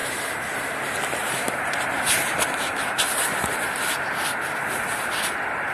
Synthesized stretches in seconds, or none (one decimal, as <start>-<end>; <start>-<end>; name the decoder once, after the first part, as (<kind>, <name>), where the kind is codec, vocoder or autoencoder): 0.0-0.7 (vocoder, BigVGAN v2); 1.2-3.9